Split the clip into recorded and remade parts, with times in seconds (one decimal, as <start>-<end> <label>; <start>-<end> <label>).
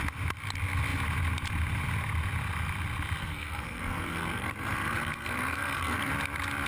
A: 0.0-3.2 recorded; 3.2-6.1 remade; 6.1-6.7 recorded